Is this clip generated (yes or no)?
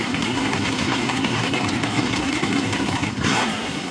yes